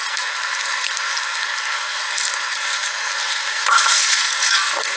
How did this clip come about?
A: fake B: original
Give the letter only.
A